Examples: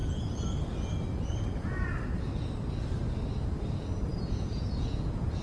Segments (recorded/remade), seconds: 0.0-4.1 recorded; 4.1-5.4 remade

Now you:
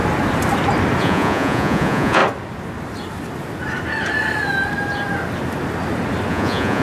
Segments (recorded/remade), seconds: 0.0-1.0 recorded; 1.0-2.2 remade; 2.2-6.3 recorded; 6.3-6.8 remade

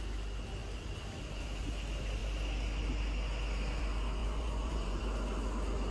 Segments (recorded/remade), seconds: 0.0-4.2 recorded; 4.2-5.0 remade; 5.0-5.9 recorded

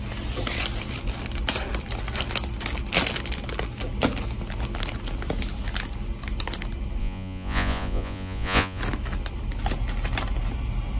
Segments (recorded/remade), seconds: 0.0-7.0 recorded; 7.0-8.8 remade; 8.8-11.0 recorded